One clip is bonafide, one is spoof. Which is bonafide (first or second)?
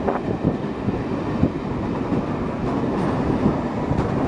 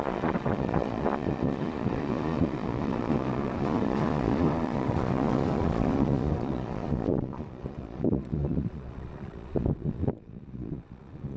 first